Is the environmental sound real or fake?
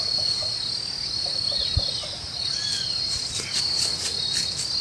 real